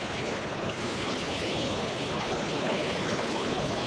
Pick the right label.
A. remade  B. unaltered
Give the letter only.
A